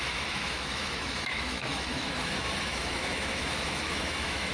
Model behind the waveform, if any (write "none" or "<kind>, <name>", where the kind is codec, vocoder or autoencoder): autoencoder, DAC-VAE